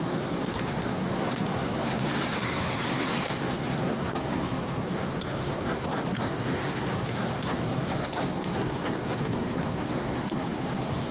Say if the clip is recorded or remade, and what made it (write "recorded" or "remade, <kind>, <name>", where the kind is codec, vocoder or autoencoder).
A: remade, codec, SNAC